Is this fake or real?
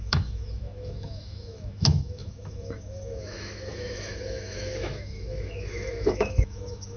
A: fake